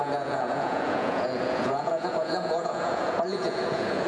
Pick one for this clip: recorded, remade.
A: remade